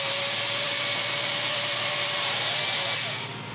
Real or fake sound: real